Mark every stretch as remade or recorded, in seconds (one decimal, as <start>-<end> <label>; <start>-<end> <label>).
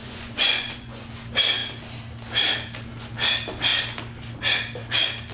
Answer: 0.0-1.1 remade; 1.1-5.3 recorded